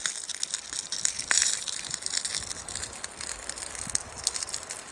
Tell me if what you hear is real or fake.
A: real